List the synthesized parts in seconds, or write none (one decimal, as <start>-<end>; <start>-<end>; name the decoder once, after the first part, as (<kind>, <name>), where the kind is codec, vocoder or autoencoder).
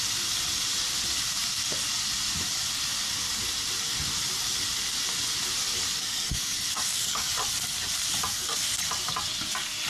6.0-7.3 (codec, SNAC)